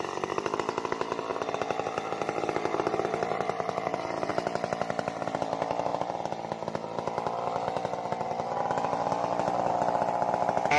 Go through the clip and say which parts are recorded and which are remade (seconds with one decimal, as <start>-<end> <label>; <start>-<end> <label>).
0.0-1.3 recorded; 1.3-4.3 remade; 4.3-10.8 recorded